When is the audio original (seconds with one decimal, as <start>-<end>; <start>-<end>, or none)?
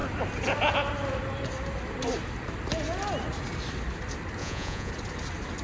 0.0-4.4; 4.9-5.6